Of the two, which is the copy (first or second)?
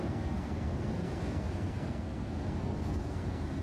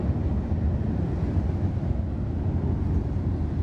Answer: first